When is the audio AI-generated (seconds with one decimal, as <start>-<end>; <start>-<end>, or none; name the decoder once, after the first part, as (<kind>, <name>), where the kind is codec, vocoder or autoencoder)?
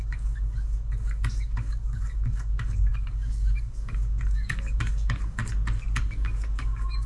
0.0-5.4 (codec, DAC); 6.0-7.1